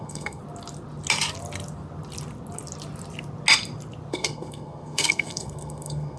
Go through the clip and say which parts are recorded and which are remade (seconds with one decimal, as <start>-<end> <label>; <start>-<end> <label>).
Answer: 0.0-0.4 remade; 0.4-4.1 recorded; 4.1-6.2 remade